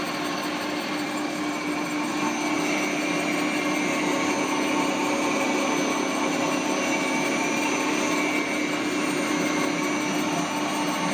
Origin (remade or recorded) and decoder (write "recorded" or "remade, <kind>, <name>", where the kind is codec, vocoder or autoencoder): recorded